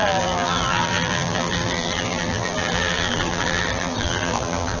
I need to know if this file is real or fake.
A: fake